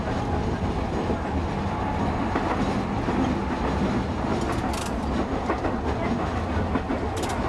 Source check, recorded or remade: recorded